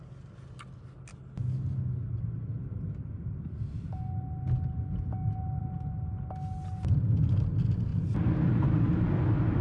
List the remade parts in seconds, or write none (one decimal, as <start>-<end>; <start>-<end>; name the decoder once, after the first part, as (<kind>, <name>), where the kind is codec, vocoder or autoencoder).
none